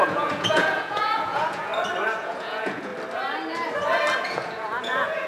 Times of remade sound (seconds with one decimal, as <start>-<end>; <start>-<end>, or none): 0.0-1.7; 2.2-2.9; 4.2-5.3